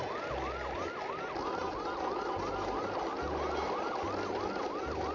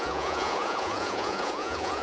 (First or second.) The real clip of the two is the first